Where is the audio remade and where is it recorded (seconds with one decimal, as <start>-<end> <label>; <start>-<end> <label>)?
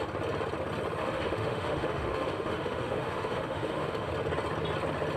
0.0-1.0 recorded; 1.0-4.1 remade; 4.1-5.2 recorded